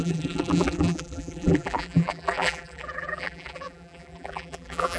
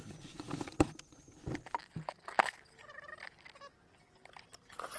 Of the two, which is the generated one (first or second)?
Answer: first